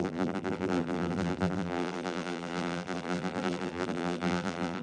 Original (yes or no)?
no